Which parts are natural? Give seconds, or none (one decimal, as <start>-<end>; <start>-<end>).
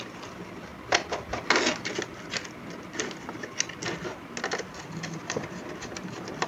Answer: 0.0-6.5